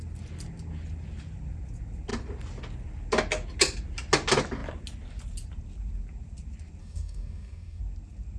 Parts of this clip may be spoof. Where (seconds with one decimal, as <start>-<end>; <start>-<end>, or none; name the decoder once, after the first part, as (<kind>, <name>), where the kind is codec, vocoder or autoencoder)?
6.8-7.8 (codec, DAC)